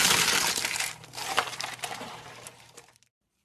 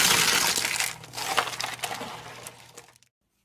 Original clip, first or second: second